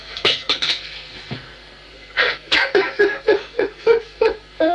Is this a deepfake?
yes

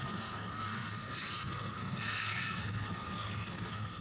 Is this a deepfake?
yes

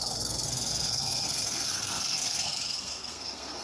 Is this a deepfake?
yes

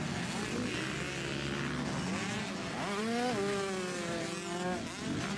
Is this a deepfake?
no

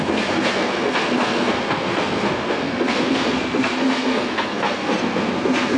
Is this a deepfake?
yes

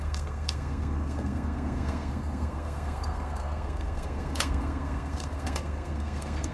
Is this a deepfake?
yes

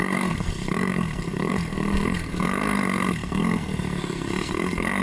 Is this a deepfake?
yes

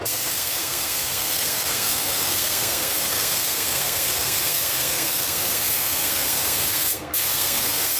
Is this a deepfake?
yes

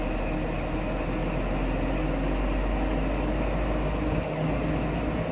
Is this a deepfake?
no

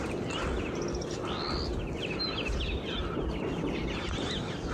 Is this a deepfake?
no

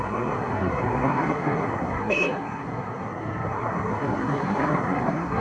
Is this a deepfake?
yes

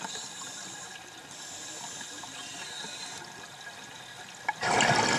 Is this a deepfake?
no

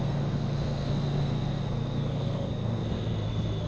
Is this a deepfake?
yes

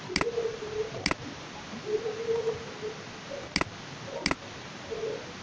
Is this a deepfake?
no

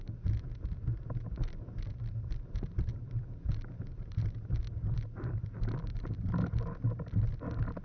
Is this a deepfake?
no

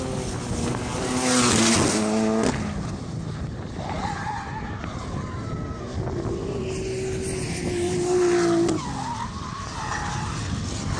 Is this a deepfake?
no